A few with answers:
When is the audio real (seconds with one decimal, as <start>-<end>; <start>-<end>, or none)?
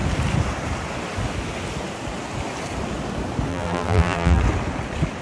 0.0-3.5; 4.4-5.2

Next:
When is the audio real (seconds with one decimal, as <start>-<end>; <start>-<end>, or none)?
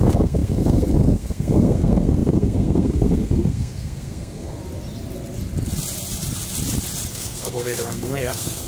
4.6-7.1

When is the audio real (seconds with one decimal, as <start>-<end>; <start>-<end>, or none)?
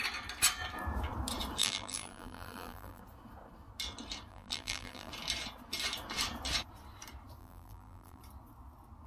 0.0-1.6; 3.0-4.3; 5.1-7.4; 8.2-9.1